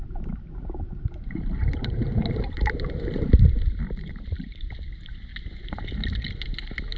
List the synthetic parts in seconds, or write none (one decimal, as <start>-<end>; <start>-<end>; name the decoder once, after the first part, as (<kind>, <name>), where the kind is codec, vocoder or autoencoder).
1.6-4.7 (vocoder, BigVGAN v2)